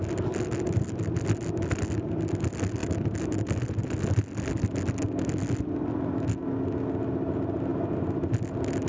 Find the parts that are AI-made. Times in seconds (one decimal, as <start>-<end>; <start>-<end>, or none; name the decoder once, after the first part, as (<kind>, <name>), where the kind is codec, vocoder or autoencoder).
none